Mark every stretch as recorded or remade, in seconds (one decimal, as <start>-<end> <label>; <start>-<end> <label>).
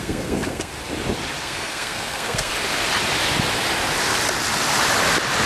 0.0-0.7 remade; 0.7-1.4 recorded; 1.4-2.5 remade; 2.5-5.5 recorded